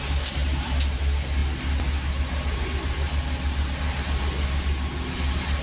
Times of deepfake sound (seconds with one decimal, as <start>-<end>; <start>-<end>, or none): 0.4-1.0